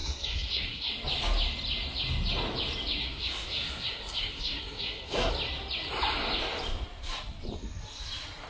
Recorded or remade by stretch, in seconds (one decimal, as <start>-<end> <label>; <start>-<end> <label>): 0.0-0.9 remade; 0.9-3.0 recorded; 3.0-5.3 remade; 5.3-8.5 recorded

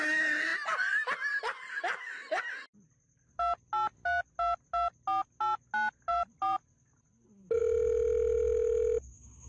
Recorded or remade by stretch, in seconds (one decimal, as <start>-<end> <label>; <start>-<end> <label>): 0.0-6.1 recorded; 6.1-7.6 remade; 7.6-9.5 recorded

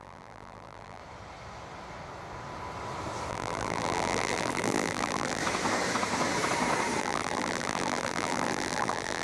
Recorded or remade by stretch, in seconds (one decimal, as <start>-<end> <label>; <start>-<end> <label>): 0.0-1.0 remade; 1.0-3.3 recorded; 3.3-5.4 remade; 5.4-7.0 recorded; 7.0-9.2 remade